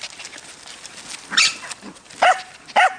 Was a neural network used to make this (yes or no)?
no